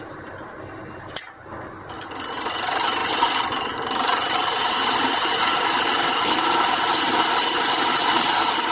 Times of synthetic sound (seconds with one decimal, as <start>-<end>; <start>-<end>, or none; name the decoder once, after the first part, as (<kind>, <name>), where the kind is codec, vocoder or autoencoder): none